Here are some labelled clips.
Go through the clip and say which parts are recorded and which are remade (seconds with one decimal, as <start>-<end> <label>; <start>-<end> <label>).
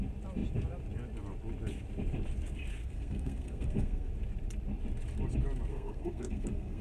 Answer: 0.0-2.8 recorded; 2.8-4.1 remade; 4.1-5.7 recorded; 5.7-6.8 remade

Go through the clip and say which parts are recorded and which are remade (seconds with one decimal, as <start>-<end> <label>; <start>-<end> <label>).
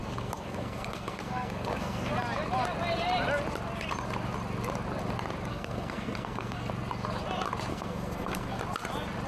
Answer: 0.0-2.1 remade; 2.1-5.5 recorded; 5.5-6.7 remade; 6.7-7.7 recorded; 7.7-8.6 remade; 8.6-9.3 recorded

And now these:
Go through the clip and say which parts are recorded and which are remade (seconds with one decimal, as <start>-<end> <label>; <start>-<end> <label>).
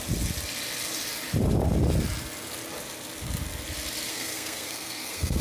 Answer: 0.0-4.1 recorded; 4.1-5.4 remade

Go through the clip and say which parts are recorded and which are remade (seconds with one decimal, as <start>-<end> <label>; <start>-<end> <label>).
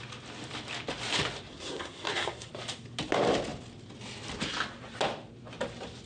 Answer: 0.0-1.5 recorded; 1.5-2.5 remade; 2.5-6.1 recorded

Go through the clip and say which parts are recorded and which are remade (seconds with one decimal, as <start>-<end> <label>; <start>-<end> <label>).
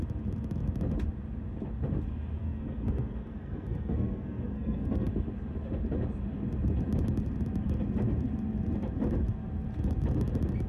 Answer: 0.0-2.4 recorded; 2.4-5.1 remade; 5.1-10.7 recorded